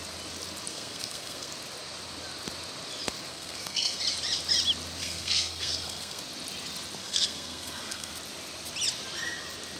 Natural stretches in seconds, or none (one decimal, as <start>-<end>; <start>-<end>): 0.0-0.7; 1.5-3.3; 4.0-5.0; 6.2-7.0; 8.1-9.8